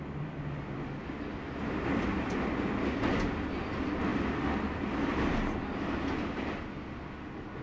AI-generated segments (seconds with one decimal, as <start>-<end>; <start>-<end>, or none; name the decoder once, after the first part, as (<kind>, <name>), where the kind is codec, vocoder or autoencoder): none